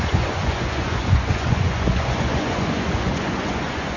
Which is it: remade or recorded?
remade